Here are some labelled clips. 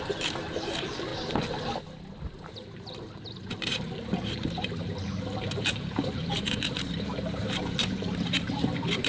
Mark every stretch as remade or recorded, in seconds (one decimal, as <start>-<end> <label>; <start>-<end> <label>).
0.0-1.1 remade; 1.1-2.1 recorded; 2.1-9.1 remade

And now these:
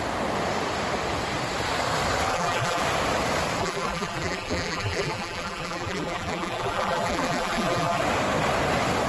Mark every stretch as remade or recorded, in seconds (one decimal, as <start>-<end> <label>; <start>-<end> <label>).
0.0-2.3 recorded; 2.3-2.8 remade; 2.8-3.6 recorded; 3.6-8.0 remade; 8.0-9.1 recorded

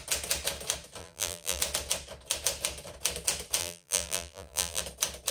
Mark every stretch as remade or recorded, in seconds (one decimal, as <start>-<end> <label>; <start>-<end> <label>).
0.0-1.0 recorded; 1.0-1.6 remade; 1.6-3.6 recorded; 3.6-4.8 remade; 4.8-5.3 recorded